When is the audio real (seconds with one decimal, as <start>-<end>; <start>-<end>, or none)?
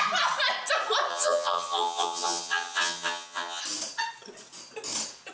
0.0-1.1; 3.6-5.3